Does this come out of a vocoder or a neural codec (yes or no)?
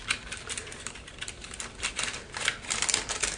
yes